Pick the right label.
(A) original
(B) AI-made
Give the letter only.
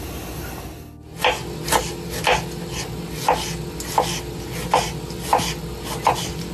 A